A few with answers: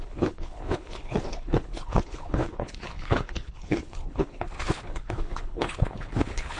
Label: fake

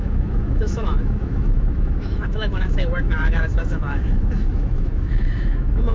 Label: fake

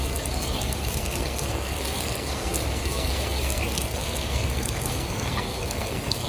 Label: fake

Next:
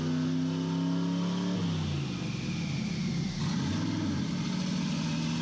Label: real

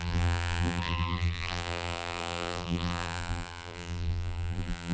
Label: fake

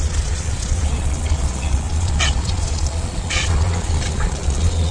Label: fake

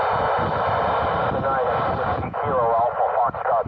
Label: real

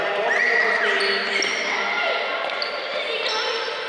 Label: real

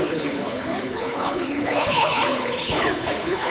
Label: fake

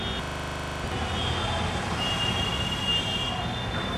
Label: real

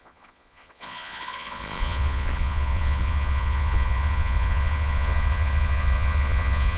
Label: fake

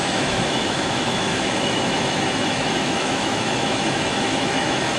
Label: fake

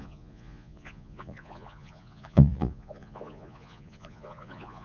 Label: fake